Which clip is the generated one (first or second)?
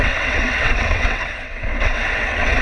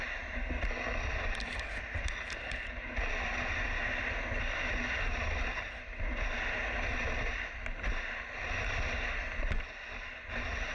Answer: first